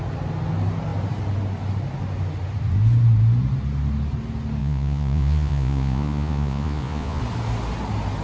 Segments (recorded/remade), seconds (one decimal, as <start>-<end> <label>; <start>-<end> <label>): 0.0-4.6 recorded; 4.6-7.2 remade; 7.2-8.2 recorded